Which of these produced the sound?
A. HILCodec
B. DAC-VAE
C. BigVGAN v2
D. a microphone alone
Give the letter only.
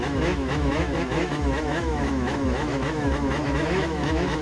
B